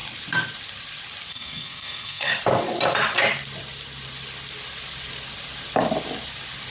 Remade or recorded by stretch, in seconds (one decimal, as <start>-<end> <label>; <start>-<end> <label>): 0.0-1.3 recorded; 1.3-2.3 remade; 2.3-6.7 recorded